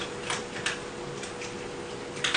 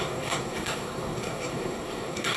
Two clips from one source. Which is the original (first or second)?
first